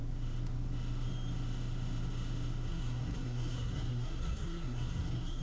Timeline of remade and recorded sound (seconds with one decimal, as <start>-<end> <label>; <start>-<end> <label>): 0.0-2.7 recorded; 2.7-5.4 remade